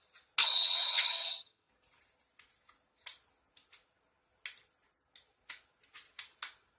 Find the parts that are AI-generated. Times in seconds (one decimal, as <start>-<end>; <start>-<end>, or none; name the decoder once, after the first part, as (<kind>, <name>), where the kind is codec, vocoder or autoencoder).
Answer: 0.4-1.7 (vocoder, HiFi-GAN)